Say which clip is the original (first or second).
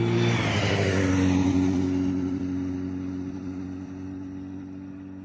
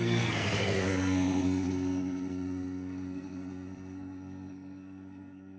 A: first